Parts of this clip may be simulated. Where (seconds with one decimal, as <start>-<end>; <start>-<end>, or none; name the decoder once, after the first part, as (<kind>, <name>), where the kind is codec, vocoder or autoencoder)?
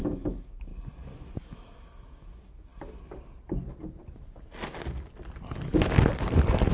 0.0-0.7 (autoencoder, DAC-VAE); 1.4-2.7